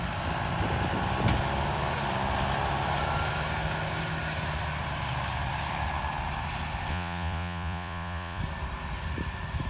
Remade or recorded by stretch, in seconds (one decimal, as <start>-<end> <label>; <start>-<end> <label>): 0.0-6.9 recorded; 6.9-8.4 remade; 8.4-9.7 recorded